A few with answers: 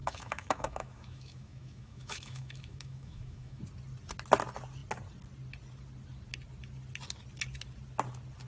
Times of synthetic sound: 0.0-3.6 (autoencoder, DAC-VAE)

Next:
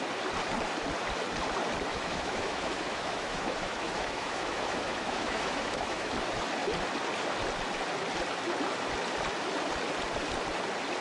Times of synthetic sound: 1.9-6.1 (autoencoder, DAC-VAE)

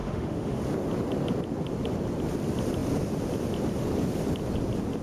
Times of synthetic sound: 0.0-0.6 (autoencoder, DAC-VAE)

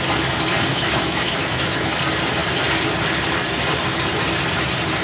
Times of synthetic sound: 0.7-2.0 (autoencoder, DAC-VAE)